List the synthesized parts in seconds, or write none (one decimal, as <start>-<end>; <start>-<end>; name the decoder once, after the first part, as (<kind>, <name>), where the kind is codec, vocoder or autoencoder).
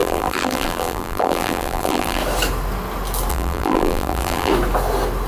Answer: 0.0-2.2 (vocoder, BigVGAN v2); 3.3-4.5